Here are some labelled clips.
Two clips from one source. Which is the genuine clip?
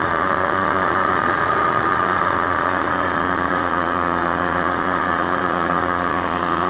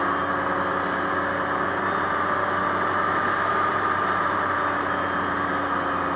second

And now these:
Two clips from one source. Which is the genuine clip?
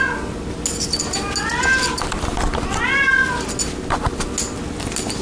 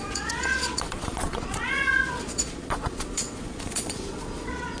first